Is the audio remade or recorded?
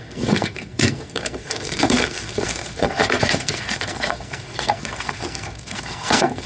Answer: remade